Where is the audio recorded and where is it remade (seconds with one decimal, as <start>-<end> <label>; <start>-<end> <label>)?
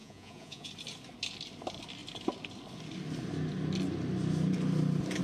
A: 0.0-0.7 remade; 0.7-5.2 recorded